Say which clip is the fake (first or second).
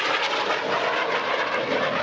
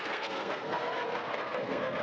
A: second